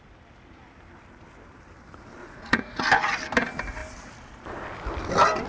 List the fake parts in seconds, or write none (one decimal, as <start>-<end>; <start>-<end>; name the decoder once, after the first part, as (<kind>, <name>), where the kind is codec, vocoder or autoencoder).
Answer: 2.2-2.8 (vocoder, Vocos)